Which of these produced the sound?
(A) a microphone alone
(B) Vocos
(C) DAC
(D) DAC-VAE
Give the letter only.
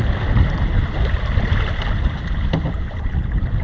A